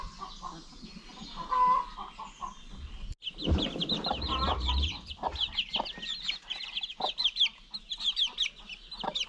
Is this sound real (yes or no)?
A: yes